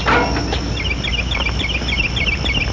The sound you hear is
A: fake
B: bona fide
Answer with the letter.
B